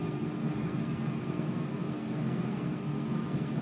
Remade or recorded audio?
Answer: remade